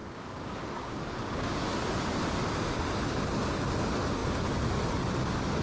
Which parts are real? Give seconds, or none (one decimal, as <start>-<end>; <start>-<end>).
1.6-5.6